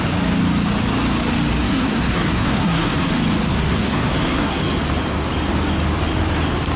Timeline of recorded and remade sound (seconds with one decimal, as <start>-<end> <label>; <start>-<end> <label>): 0.0-1.6 recorded; 1.6-3.1 remade; 3.1-3.5 recorded; 3.5-4.6 remade; 4.6-6.8 recorded